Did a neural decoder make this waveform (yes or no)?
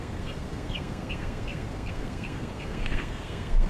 yes